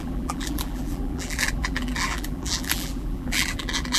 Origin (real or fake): fake